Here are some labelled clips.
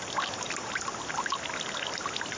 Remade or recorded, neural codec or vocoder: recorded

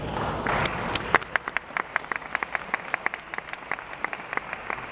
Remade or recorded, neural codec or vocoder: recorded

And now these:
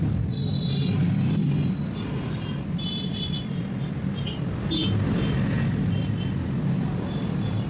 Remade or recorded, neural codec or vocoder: recorded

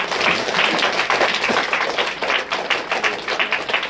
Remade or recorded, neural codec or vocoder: recorded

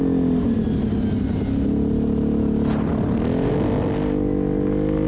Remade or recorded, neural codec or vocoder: recorded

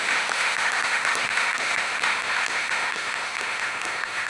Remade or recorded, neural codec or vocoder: remade, autoencoder, DAC-VAE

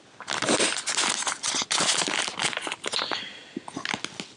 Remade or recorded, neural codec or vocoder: recorded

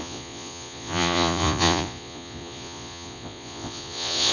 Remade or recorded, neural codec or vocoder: remade, vocoder, Vocos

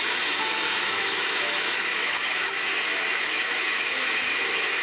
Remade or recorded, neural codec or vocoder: remade, autoencoder, DAC-VAE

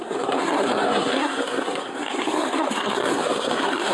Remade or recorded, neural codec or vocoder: remade, codec, SNAC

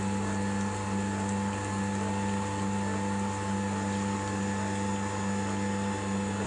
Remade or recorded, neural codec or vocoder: recorded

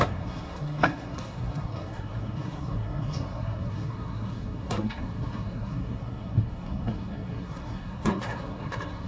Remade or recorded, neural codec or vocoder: remade, codec, SNAC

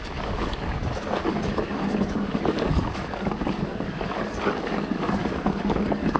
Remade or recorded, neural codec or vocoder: remade, codec, DAC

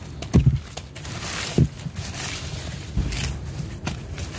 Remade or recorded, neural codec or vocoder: recorded